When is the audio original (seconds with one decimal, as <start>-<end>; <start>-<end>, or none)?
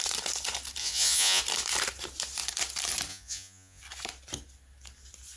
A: 0.0-0.8; 1.4-3.1; 3.8-5.4